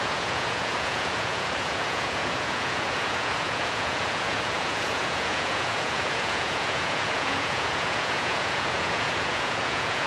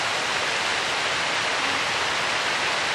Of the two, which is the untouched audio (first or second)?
second